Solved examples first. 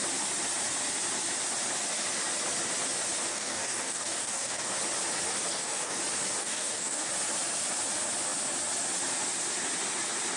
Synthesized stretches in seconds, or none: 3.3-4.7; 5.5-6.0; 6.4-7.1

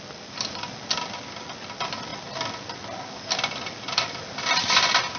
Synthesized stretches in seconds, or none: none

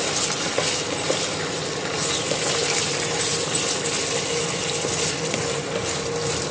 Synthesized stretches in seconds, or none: none

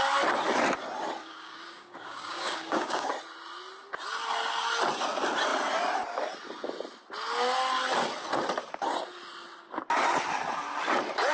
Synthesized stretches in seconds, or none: 1.2-3.1

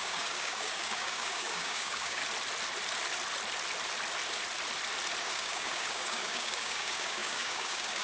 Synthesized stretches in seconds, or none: 0.0-2.2; 5.2-8.0

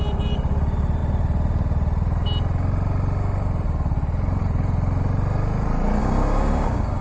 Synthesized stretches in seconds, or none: 6.0-7.0

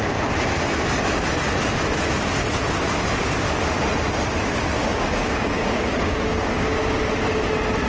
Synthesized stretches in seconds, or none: 4.8-7.1

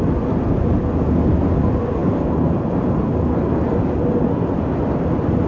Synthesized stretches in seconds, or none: none